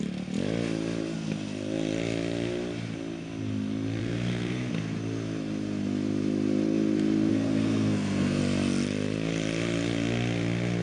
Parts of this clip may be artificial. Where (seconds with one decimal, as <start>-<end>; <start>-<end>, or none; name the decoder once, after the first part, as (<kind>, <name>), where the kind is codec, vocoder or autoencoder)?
4.0-4.7 (codec, SNAC); 7.3-8.4